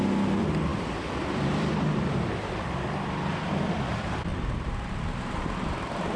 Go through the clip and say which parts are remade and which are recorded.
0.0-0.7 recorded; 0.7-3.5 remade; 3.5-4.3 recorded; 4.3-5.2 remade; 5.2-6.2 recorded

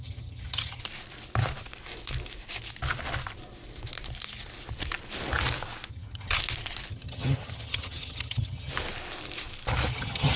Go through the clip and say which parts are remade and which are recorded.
0.0-0.8 remade; 0.8-5.9 recorded; 5.9-6.4 remade; 6.4-6.9 recorded; 6.9-8.7 remade; 8.7-9.9 recorded; 9.9-10.4 remade

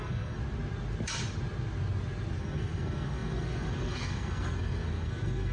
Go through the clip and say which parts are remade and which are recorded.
0.0-0.4 remade; 0.4-2.4 recorded; 2.4-5.5 remade

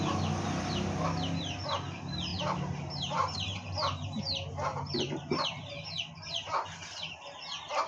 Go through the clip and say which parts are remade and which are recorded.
0.0-2.3 recorded; 2.3-4.2 remade; 4.2-4.7 recorded; 4.7-5.5 remade; 5.5-7.9 recorded

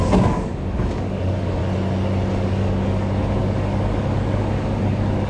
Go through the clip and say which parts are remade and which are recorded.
0.0-1.6 remade; 1.6-2.3 recorded; 2.3-5.3 remade

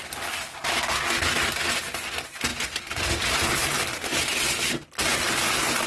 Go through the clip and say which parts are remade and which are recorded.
0.0-5.9 recorded